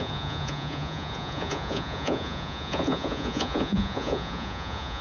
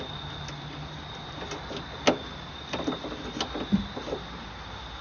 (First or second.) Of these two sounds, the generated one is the first